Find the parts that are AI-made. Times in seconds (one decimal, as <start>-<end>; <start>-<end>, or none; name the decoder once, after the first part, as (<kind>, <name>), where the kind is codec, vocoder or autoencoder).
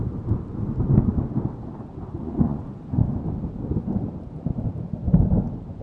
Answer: 2.2-3.0 (vocoder, Vocos)